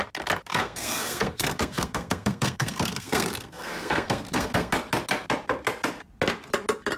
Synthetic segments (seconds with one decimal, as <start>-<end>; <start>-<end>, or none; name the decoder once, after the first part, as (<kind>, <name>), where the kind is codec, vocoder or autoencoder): 0.5-4.7 (codec, SNAC)